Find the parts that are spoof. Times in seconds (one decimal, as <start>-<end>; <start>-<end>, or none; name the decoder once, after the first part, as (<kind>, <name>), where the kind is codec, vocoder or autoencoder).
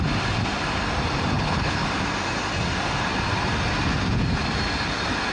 1.3-1.9 (codec, HILCodec)